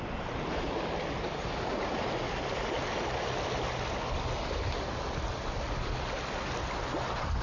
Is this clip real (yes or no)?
yes